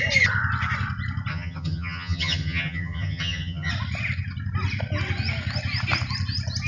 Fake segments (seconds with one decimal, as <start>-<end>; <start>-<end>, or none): 1.3-3.7